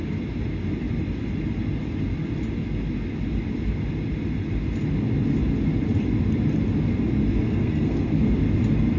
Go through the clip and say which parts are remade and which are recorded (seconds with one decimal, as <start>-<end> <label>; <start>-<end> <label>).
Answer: 0.0-7.2 recorded; 7.2-8.3 remade; 8.3-9.0 recorded